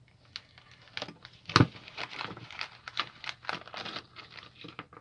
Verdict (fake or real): real